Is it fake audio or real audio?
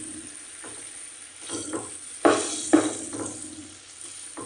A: real